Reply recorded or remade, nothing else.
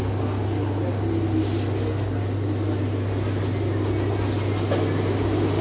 recorded